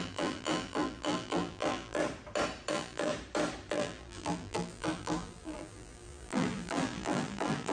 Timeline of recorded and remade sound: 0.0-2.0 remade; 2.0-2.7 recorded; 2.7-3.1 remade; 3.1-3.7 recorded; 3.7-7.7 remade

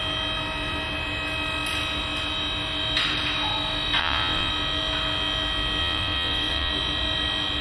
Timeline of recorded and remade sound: 0.0-4.0 recorded; 4.0-4.5 remade; 4.5-5.8 recorded; 5.8-6.7 remade; 6.7-7.6 recorded

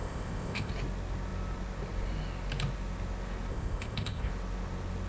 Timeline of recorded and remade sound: 0.0-0.7 remade; 0.7-3.5 recorded; 3.5-4.3 remade; 4.3-5.1 recorded

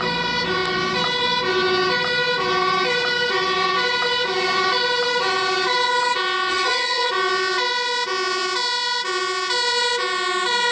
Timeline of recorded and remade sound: 0.0-6.5 recorded; 6.5-7.1 remade; 7.1-10.7 recorded

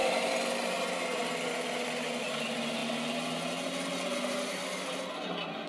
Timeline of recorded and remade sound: 0.0-5.7 recorded

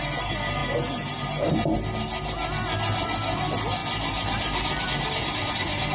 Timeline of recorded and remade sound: 0.0-5.9 recorded

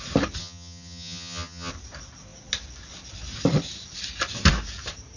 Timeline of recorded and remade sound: 0.0-0.4 recorded; 0.4-1.7 remade; 1.7-5.2 recorded